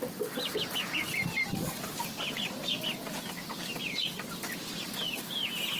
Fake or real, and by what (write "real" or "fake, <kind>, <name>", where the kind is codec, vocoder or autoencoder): real